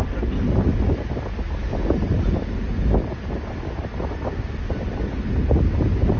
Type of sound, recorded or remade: recorded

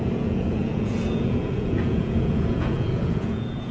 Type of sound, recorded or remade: remade